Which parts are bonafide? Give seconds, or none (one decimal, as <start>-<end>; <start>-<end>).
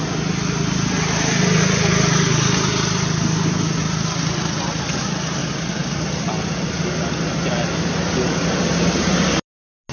0.0-5.4; 6.2-9.9